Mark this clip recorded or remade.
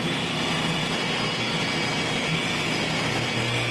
recorded